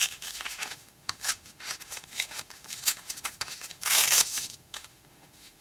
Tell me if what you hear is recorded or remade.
remade